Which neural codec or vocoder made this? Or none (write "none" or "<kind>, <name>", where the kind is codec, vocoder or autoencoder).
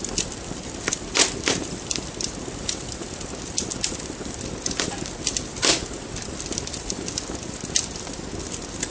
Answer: none